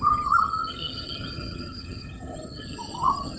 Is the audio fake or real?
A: fake